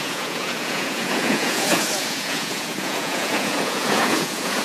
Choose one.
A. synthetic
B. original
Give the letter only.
A